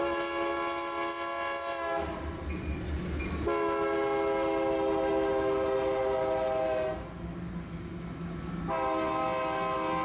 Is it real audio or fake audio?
real